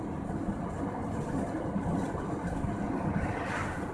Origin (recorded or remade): recorded